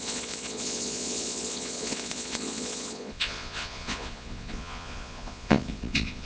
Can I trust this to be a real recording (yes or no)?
no